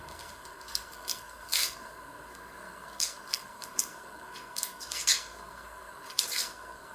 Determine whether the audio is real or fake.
fake